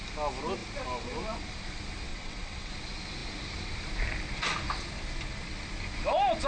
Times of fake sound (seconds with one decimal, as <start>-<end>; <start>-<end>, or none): 2.1-2.7